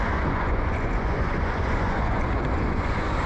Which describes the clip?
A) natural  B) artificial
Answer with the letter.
B